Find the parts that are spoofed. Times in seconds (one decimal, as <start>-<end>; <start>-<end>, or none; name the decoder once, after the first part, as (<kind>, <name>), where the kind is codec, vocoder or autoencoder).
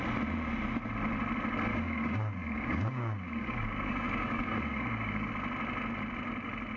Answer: 1.7-5.3 (codec, DAC)